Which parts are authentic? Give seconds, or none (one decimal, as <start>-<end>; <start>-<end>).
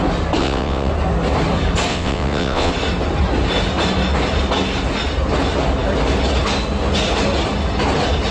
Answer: 0.0-0.4; 0.9-1.9; 2.7-8.3